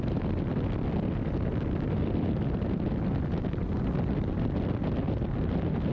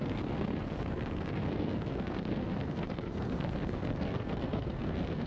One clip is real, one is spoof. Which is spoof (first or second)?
second